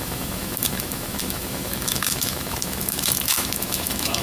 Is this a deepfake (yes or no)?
yes